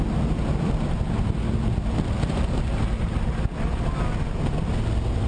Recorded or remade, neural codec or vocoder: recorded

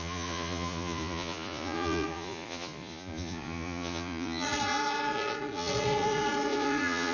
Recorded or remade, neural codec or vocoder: remade, vocoder, Vocos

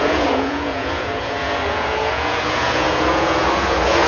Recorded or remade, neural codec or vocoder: remade, vocoder, Vocos